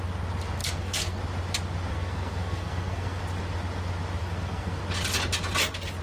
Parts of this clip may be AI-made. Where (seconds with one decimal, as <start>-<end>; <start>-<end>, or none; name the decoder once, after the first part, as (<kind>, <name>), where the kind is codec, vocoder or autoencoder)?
0.6-1.2 (codec, SNAC); 1.9-3.2; 4.2-4.8

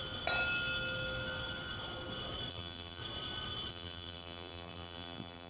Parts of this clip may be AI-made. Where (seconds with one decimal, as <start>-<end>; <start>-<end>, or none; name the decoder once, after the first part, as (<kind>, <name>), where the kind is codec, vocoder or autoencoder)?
2.5-3.0 (vocoder, BigVGAN v2); 3.7-5.5